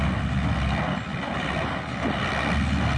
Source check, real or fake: real